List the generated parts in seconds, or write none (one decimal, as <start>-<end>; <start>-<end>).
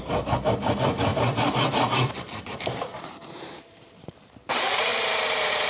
1.1-4.5; 4.9-5.7